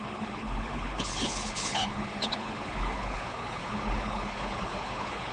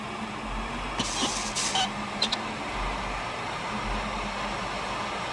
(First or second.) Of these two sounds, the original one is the second